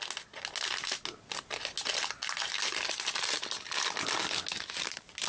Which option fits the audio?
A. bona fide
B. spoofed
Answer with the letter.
A